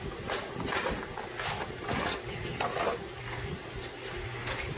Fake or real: real